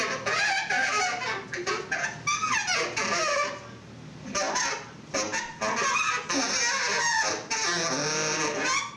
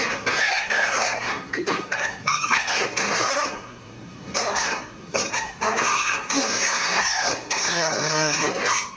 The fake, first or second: second